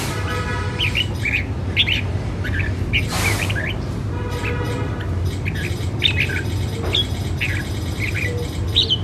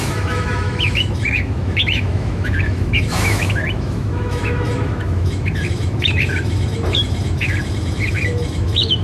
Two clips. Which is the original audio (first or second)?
first